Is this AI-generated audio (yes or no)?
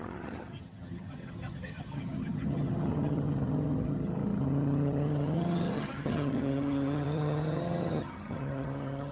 yes